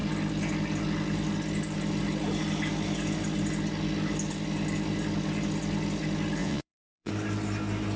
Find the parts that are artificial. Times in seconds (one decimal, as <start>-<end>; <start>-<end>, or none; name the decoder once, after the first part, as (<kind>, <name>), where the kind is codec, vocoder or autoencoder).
6.4-7.1 (vocoder, Vocos)

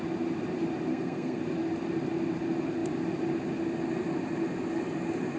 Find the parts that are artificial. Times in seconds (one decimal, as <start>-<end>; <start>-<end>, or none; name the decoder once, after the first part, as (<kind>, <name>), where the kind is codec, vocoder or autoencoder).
0.9-1.4 (codec, SNAC)

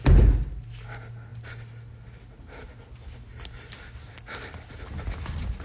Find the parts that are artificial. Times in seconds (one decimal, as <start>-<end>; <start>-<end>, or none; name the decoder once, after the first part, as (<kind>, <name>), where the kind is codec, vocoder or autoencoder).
none

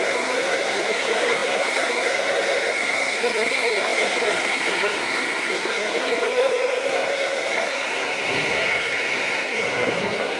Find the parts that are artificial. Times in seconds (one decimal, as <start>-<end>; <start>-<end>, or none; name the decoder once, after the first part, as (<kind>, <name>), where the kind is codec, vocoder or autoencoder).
0.0-10.4 (codec, SNAC)

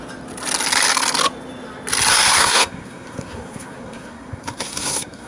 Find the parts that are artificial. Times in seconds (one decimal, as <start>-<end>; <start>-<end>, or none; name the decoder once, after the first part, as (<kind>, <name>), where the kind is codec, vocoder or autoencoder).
2.1-5.3 (codec, SNAC)

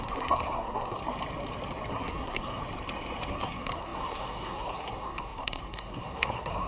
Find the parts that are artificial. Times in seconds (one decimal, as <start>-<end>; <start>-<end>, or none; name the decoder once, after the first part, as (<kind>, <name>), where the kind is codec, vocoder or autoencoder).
0.0-1.0 (codec, SNAC); 1.9-2.6; 3.3-6.7

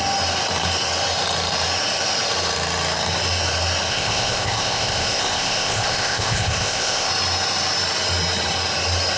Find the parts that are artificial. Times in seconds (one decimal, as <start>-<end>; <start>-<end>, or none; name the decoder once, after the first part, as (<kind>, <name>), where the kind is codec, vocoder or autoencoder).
3.9-7.1 (codec, ZipCodec)